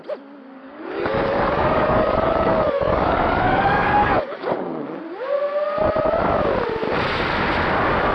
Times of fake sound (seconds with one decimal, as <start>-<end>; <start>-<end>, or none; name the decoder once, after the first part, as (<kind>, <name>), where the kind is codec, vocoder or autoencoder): 0.6-4.8 (codec, DAC)